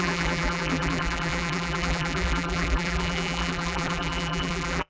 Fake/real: fake